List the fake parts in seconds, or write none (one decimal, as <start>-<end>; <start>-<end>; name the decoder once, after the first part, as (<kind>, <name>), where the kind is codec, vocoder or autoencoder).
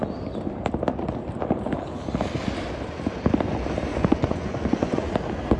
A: 3.9-5.1 (vocoder, Vocos)